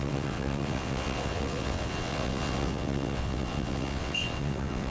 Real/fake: fake